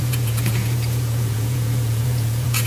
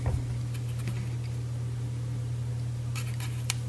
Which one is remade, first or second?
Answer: first